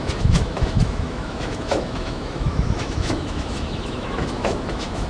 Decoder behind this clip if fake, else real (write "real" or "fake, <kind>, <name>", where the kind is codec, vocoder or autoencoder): fake, autoencoder, DAC-VAE